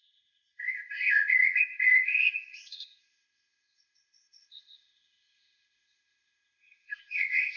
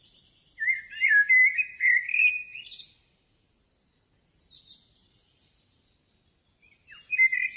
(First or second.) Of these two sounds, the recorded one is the second